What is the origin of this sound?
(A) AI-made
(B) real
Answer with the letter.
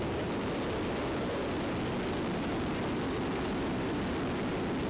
B